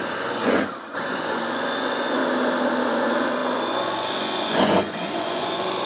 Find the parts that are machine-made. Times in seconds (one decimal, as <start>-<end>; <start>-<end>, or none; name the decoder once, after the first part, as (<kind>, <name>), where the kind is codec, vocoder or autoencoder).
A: 0.0-2.2 (vocoder, Vocos); 2.9-5.9